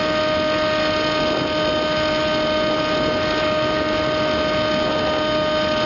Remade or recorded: recorded